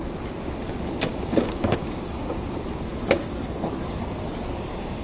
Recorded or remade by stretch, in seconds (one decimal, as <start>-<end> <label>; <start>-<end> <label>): 0.0-1.1 recorded; 1.1-2.5 remade; 2.5-5.0 recorded

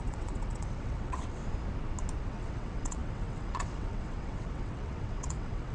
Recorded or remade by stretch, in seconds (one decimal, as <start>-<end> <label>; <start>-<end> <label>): 0.0-1.4 remade; 1.4-2.2 recorded; 2.2-5.7 remade

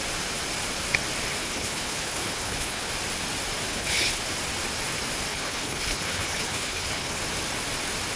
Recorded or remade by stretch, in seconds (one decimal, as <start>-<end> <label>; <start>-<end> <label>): 0.0-1.4 recorded; 1.4-2.9 remade; 2.9-3.7 recorded; 3.7-4.2 remade; 4.2-5.3 recorded; 5.3-7.2 remade; 7.2-8.2 recorded

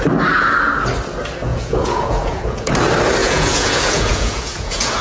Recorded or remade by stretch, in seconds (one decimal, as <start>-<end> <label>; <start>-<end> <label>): 0.0-1.5 recorded; 1.5-2.7 remade; 2.7-3.2 recorded; 3.2-5.0 remade

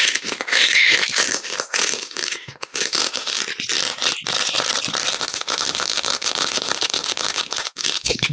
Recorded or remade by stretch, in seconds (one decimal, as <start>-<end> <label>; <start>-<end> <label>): 0.0-3.4 remade; 3.4-5.1 recorded; 5.1-8.3 remade

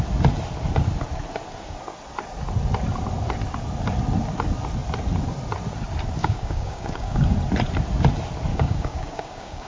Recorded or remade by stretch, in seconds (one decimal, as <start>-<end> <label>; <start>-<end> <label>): 0.0-6.2 recorded; 6.2-7.2 remade; 7.2-8.5 recorded; 8.5-9.7 remade